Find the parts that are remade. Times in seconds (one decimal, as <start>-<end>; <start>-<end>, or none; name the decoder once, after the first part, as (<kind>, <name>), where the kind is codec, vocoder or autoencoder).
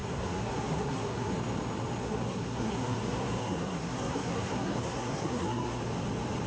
0.0-1.3 (codec, SNAC); 2.0-5.8